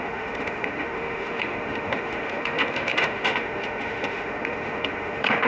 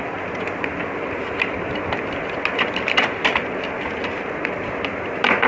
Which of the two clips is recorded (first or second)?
second